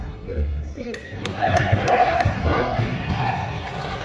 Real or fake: fake